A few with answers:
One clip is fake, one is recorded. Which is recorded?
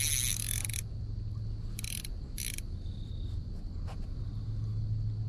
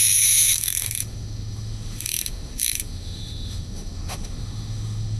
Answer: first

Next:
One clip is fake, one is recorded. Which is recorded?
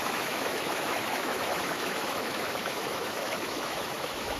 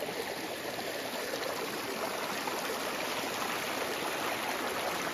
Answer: second